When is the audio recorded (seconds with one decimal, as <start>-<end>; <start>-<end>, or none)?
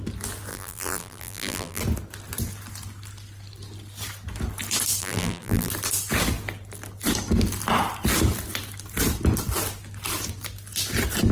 0.0-0.5; 1.8-5.0; 5.7-11.3